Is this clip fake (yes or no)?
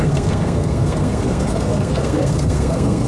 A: yes